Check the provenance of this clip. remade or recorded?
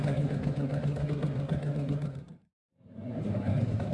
remade